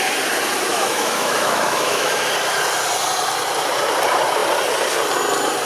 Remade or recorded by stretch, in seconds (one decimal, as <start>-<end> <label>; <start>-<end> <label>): 0.0-0.7 recorded; 0.7-2.3 remade; 2.3-5.7 recorded